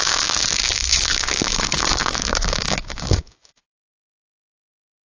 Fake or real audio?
fake